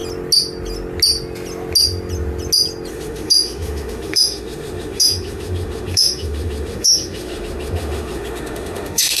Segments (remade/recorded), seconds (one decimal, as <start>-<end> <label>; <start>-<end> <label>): 0.0-2.9 recorded; 2.9-9.2 remade